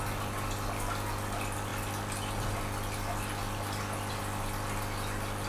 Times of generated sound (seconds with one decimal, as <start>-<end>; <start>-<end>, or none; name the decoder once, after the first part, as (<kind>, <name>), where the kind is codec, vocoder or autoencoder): none